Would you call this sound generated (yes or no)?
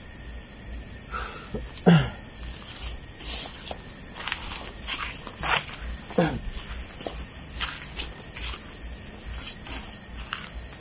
no